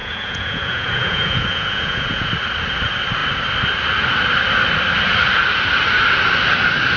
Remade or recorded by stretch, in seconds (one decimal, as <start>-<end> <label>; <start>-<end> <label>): 0.0-2.3 remade; 2.3-7.0 recorded